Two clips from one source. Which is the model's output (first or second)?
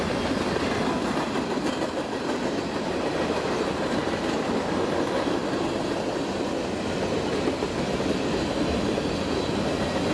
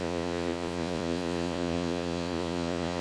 second